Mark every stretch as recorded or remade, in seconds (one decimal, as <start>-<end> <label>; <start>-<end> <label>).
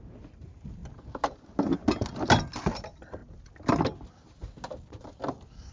0.0-0.8 remade; 0.8-2.5 recorded; 2.5-3.2 remade; 3.2-5.0 recorded; 5.0-5.7 remade